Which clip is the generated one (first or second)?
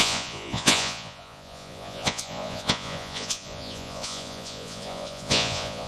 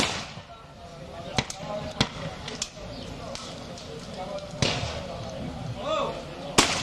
first